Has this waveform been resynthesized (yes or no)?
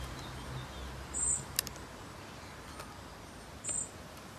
no